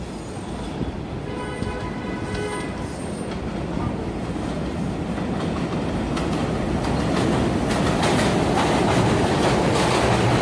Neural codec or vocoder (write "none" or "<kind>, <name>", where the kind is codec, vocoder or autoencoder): none